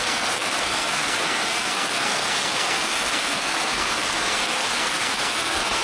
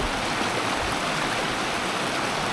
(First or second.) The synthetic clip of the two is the first